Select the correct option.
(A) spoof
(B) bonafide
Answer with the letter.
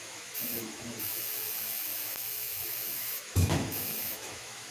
A